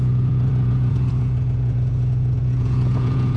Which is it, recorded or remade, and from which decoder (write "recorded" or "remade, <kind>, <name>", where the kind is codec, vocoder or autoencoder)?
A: remade, vocoder, Vocos